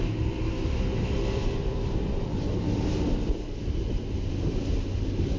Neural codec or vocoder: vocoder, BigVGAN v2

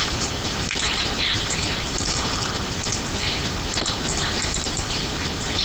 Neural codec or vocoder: vocoder, BigVGAN v2